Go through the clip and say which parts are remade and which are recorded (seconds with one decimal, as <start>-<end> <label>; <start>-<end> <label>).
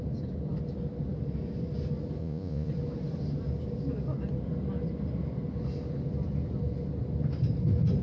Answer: 0.0-2.2 recorded; 2.2-2.7 remade; 2.7-8.0 recorded